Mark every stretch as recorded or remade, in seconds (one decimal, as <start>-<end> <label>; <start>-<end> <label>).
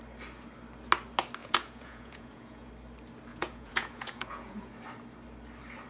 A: 0.0-1.4 recorded; 1.4-2.7 remade; 2.7-3.3 recorded; 3.3-4.7 remade; 4.7-5.9 recorded